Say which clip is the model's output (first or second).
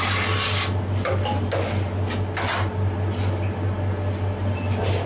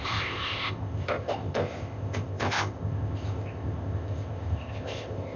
second